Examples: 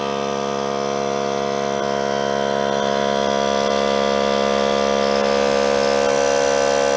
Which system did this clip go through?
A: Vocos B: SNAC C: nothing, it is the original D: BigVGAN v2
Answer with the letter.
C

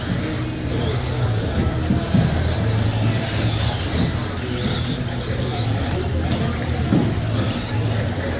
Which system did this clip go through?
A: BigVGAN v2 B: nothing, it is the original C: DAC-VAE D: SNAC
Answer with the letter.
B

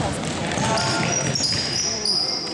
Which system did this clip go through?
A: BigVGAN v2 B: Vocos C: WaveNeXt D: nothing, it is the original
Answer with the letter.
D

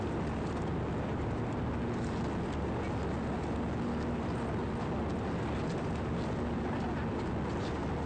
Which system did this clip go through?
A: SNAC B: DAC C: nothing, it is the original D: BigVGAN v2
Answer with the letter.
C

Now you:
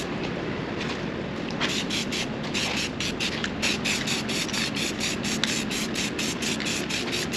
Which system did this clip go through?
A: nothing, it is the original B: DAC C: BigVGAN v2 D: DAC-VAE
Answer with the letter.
A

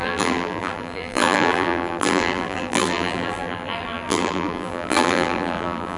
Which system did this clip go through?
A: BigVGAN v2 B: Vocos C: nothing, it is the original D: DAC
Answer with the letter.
A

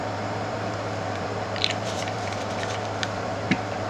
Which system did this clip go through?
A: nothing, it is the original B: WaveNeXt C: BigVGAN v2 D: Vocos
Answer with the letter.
C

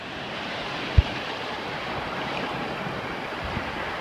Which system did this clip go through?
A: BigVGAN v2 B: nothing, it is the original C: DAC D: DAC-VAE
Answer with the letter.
B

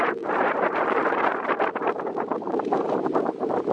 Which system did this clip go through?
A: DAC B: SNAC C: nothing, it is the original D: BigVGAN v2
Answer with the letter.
D